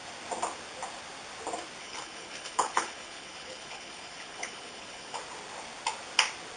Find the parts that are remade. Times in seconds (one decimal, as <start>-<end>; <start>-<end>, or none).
1.8-5.2